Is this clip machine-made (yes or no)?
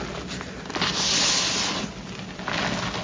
no